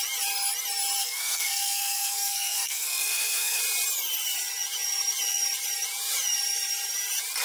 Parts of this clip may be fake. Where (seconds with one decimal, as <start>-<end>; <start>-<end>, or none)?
1.0-3.6